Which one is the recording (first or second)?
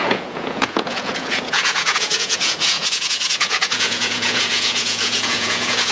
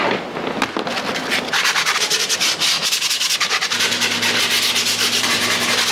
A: second